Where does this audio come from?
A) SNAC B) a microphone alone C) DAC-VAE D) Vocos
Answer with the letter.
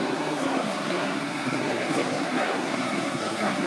A